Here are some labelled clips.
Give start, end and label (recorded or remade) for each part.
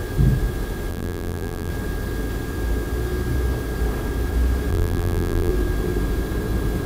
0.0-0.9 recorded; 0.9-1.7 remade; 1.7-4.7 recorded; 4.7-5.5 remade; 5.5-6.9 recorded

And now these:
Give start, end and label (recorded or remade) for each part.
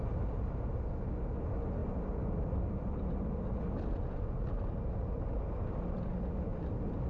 0.0-1.8 recorded; 1.8-4.2 remade; 4.2-6.5 recorded; 6.5-7.1 remade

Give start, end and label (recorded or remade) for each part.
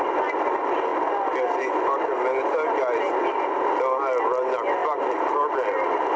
0.0-6.2 recorded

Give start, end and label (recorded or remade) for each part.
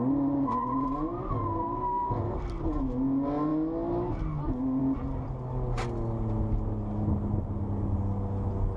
0.0-8.8 recorded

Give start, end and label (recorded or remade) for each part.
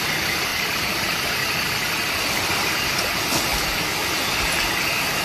0.0-0.5 recorded; 0.5-1.3 remade; 1.3-5.2 recorded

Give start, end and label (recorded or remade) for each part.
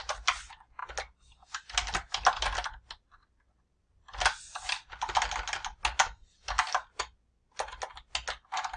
0.0-8.8 recorded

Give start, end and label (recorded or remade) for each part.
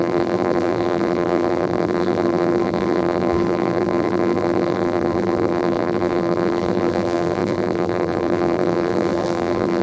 0.0-9.8 remade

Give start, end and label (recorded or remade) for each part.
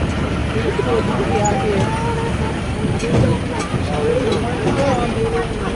0.0-5.7 recorded